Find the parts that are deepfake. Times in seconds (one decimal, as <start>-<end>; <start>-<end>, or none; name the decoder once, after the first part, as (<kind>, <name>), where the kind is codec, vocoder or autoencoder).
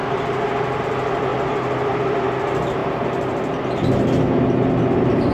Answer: none